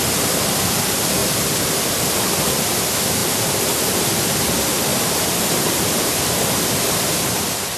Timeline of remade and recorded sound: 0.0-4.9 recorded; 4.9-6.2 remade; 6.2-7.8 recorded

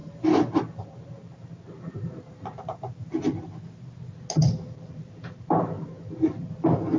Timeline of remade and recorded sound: 0.0-2.9 remade; 2.9-4.4 recorded; 4.4-6.5 remade; 6.5-7.0 recorded

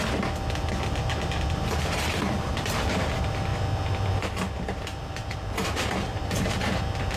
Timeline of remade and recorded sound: 0.0-4.9 recorded; 4.9-6.2 remade; 6.2-7.2 recorded

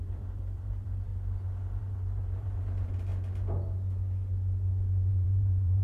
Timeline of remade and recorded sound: 0.0-1.1 remade; 1.1-1.8 recorded; 1.8-3.1 remade; 3.1-5.1 recorded; 5.1-5.8 remade